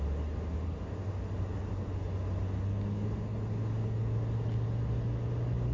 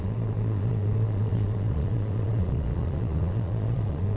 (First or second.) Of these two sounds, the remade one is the second